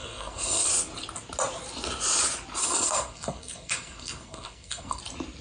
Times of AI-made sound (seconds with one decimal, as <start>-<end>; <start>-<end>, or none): 0.0-0.7; 2.6-5.0